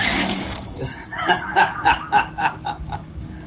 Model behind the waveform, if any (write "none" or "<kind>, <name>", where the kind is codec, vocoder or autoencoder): codec, DAC